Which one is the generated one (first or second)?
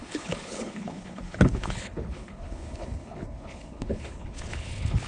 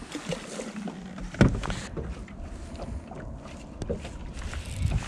first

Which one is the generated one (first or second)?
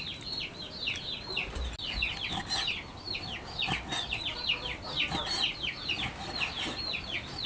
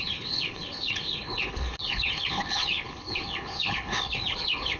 second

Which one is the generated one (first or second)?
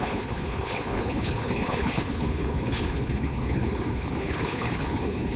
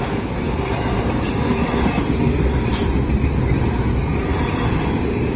first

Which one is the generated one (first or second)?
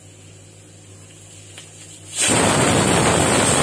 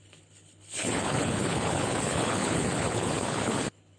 second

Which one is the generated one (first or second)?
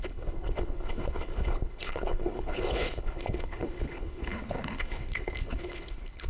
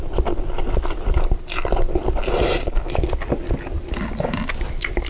first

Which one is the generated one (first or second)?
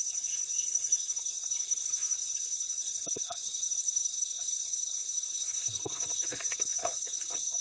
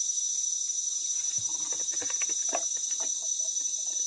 first